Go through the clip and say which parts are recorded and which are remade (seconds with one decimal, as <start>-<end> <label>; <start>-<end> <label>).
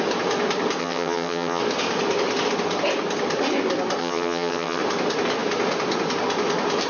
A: 0.0-0.8 recorded; 0.8-1.6 remade; 1.6-4.0 recorded; 4.0-4.8 remade; 4.8-6.9 recorded